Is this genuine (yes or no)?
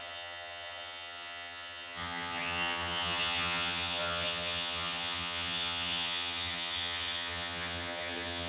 no